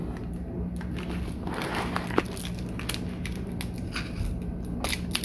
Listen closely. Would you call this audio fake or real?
real